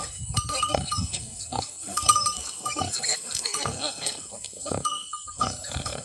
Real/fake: fake